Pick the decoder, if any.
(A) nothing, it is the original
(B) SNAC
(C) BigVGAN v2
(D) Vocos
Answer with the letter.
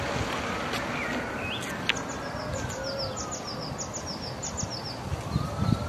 A